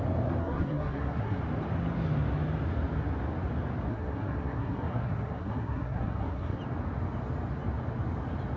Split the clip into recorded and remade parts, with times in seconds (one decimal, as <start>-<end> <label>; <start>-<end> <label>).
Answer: 0.0-0.4 recorded; 0.4-1.4 remade; 1.4-3.9 recorded; 3.9-6.6 remade; 6.6-8.6 recorded